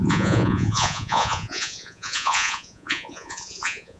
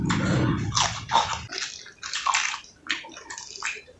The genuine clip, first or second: second